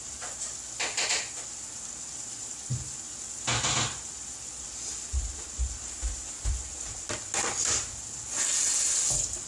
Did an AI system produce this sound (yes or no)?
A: no